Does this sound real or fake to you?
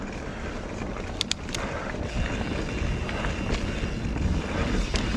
real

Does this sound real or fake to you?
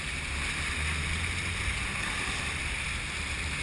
real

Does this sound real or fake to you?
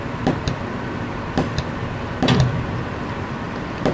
fake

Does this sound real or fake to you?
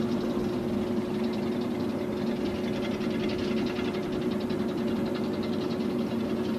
real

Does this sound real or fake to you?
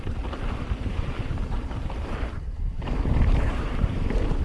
fake